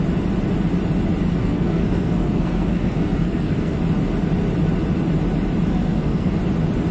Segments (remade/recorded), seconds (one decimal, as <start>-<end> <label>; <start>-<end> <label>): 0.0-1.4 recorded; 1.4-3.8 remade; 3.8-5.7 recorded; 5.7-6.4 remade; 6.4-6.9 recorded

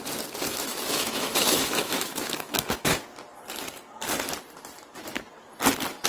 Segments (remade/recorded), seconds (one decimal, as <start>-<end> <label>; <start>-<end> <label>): 0.0-0.5 recorded; 0.5-3.0 remade; 3.0-6.1 recorded

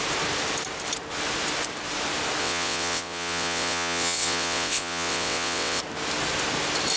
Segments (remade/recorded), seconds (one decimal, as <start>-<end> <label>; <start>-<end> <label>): 0.0-2.4 recorded; 2.4-5.8 remade; 5.8-7.0 recorded